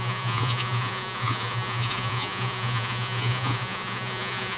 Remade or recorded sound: remade